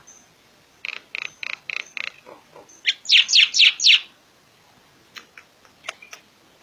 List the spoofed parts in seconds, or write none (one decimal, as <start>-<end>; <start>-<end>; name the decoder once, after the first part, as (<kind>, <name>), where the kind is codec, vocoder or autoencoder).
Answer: none